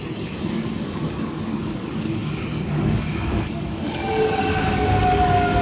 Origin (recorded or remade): remade